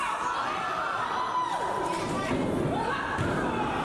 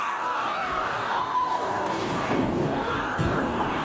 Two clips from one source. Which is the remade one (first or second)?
second